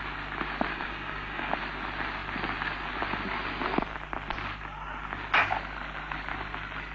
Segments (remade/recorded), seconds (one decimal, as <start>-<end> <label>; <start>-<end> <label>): 0.0-0.7 recorded; 0.7-1.5 remade; 1.5-6.9 recorded